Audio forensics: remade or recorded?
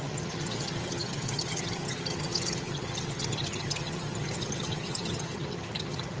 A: remade